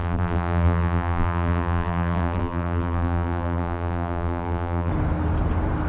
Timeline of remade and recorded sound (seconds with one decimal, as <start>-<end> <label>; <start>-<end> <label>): 0.0-4.9 remade; 4.9-5.9 recorded